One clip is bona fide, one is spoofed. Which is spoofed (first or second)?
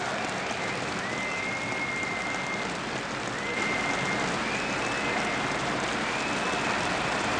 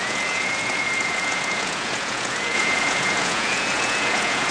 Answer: second